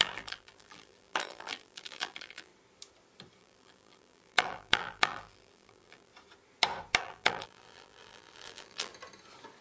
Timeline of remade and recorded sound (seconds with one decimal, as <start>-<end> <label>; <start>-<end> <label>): 0.0-2.5 remade; 2.5-3.4 recorded; 3.4-6.1 remade; 6.1-7.0 recorded; 7.0-8.9 remade; 8.9-9.6 recorded